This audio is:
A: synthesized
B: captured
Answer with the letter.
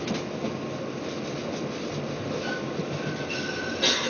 B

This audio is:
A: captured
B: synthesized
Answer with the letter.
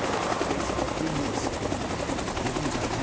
A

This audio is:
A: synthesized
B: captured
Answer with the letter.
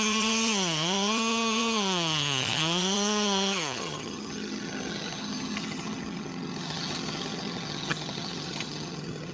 A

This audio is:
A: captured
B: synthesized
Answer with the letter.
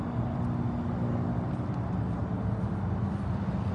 A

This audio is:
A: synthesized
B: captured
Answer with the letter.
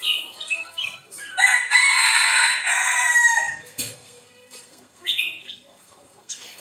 A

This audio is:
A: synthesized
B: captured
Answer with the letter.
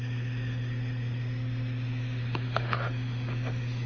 A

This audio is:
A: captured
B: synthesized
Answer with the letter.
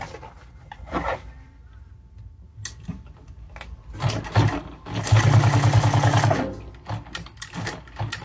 A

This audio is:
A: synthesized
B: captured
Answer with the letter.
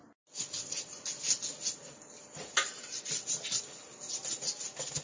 B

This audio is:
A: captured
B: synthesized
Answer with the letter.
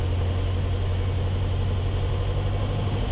A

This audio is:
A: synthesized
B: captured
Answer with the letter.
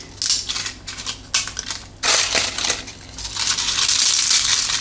B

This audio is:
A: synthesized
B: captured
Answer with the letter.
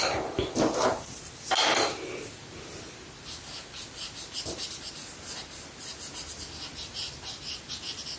B